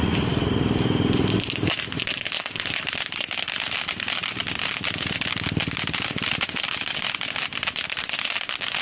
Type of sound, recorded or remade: remade